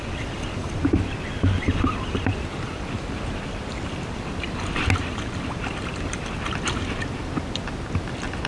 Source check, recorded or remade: recorded